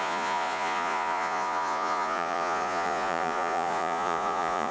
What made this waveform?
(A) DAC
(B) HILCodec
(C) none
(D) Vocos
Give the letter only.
D